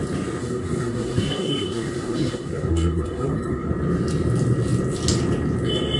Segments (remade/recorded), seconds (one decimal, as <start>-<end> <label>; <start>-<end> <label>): 0.0-0.4 recorded; 0.4-3.7 remade; 3.7-6.0 recorded